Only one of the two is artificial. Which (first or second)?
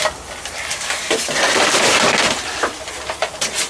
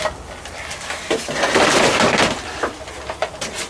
first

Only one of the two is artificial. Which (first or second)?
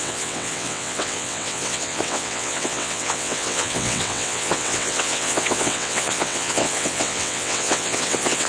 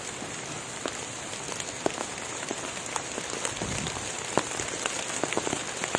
first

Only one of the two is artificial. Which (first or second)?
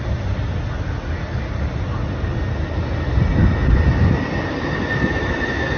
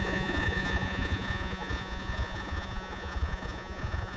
second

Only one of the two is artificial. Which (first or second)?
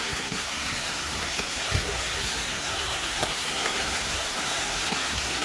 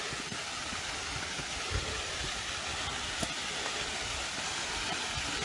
first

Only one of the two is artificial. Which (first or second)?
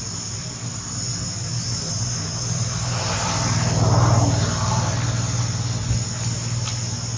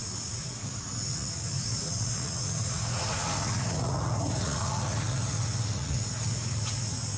second